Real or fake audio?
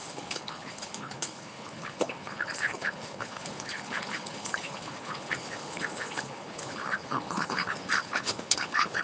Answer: fake